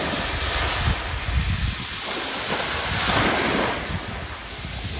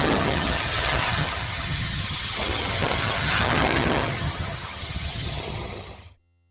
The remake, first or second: second